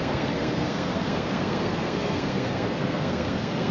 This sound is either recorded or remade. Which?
remade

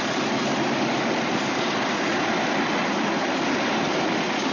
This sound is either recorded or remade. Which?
recorded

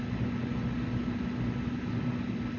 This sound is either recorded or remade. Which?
recorded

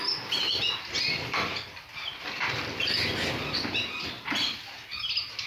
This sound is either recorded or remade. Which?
recorded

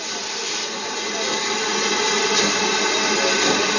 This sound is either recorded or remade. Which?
recorded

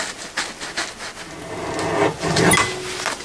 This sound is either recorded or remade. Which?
recorded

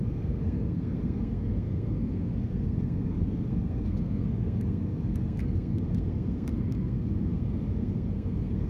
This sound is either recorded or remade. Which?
remade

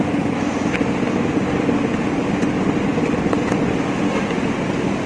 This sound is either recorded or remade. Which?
recorded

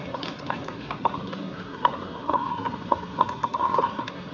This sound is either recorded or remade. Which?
remade